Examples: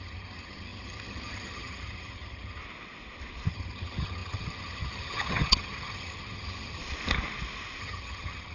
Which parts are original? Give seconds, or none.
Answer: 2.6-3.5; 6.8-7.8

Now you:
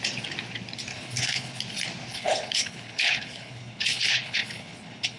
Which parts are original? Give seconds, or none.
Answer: 0.0-0.9; 1.6-2.1

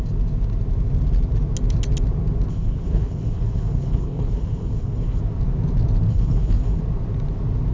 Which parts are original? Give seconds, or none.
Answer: 0.0-2.5; 5.2-6.1; 6.8-7.7